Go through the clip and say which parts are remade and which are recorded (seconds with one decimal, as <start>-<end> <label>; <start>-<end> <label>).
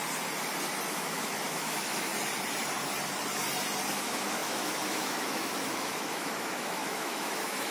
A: 0.0-0.9 recorded; 0.9-2.1 remade; 2.1-3.9 recorded; 3.9-7.7 remade